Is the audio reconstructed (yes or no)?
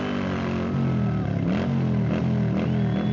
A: no